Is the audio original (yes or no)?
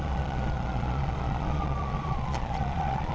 no